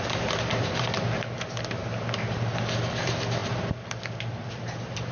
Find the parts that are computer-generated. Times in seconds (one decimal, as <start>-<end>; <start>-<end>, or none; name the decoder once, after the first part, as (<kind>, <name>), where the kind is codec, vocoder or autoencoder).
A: none